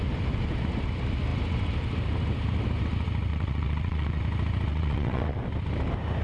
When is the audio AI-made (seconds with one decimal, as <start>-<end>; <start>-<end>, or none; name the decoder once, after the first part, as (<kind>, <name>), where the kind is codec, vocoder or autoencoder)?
3.3-4.2 (vocoder, WaveNeXt); 4.7-5.4